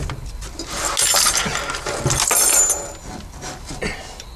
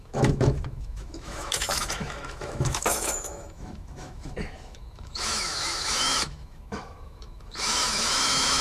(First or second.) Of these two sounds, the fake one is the second